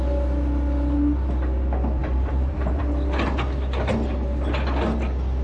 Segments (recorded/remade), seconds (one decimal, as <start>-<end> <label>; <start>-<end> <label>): 0.0-2.0 recorded; 2.0-2.8 remade; 2.8-5.4 recorded